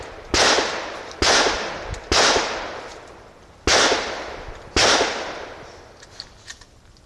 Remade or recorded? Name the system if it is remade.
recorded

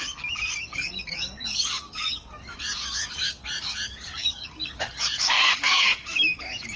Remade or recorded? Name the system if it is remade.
remade, codec, DAC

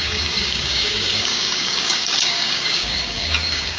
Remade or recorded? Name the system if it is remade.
remade, codec, DAC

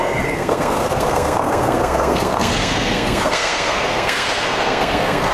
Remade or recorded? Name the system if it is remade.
remade, codec, SNAC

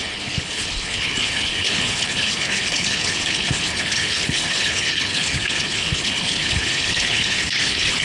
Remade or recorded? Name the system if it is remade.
remade, codec, HILCodec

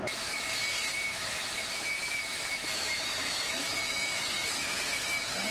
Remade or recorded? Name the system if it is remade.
remade, autoencoder, DAC-VAE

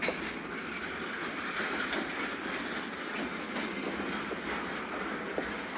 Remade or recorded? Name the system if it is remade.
recorded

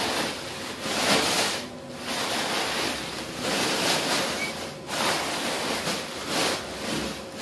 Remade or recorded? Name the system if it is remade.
recorded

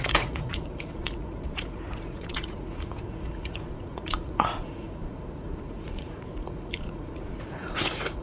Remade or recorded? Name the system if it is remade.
remade, vocoder, Vocos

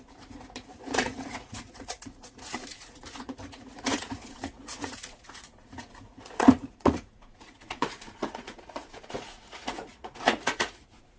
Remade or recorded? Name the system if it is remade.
remade, vocoder, Vocos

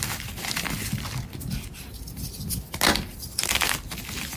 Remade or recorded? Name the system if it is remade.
recorded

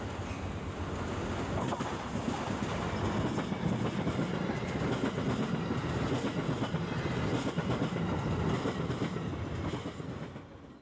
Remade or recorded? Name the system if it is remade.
recorded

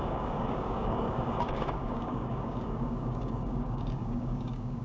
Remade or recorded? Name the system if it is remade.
remade, codec, DAC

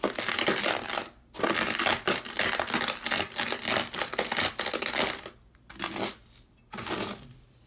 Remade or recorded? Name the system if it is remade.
recorded